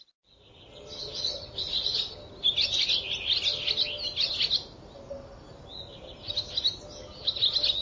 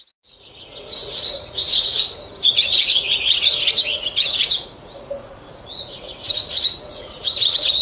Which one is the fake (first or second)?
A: second